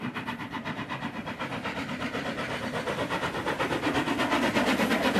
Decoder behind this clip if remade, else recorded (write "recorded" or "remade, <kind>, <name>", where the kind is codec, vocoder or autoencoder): recorded